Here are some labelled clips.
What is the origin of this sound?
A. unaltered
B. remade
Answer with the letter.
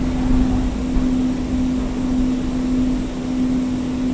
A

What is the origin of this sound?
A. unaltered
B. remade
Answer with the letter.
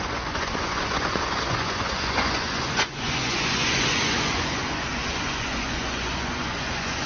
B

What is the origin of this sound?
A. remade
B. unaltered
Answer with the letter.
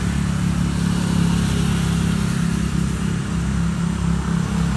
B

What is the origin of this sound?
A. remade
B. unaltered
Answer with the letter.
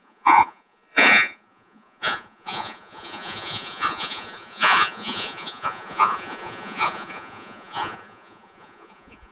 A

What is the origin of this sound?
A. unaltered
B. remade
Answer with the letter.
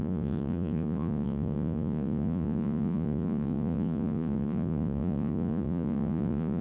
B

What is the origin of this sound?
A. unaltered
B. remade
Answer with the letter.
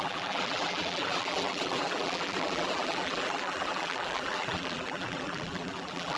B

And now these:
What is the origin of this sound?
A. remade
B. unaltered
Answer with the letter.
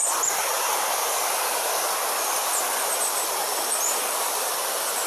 B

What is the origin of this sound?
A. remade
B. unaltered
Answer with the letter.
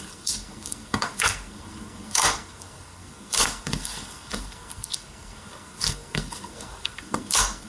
A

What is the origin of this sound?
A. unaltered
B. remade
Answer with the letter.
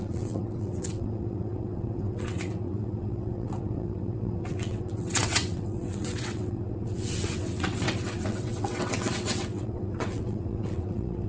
B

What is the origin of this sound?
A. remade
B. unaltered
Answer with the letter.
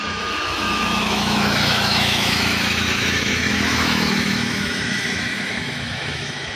A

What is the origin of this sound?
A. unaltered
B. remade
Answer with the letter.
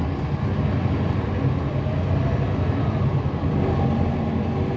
A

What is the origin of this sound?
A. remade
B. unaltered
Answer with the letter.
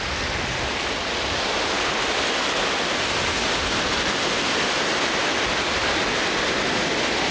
B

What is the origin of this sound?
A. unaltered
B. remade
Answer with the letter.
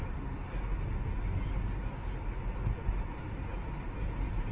A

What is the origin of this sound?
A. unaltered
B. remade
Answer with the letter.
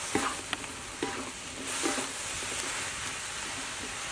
A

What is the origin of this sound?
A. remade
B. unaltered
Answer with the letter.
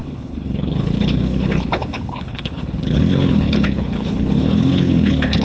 A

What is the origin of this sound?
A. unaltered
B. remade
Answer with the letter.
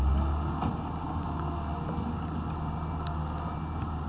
A